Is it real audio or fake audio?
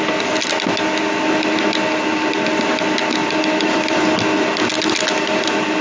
real